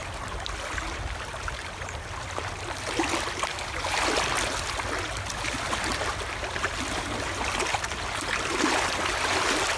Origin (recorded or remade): recorded